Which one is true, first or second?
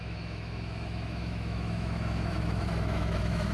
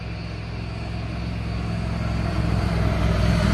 second